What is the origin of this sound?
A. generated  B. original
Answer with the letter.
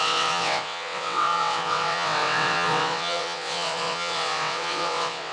A